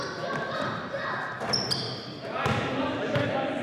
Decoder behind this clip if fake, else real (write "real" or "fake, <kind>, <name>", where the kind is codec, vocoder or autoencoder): real